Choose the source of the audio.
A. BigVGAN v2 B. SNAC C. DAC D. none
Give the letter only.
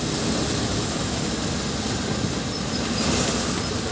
D